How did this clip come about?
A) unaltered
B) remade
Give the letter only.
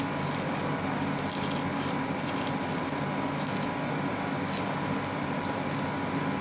A